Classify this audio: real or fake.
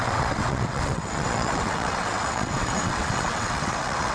fake